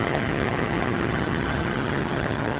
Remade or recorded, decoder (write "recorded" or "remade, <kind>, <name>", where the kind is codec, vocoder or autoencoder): remade, vocoder, HiFi-GAN